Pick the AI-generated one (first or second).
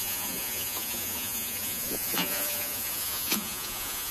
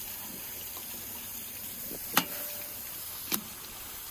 first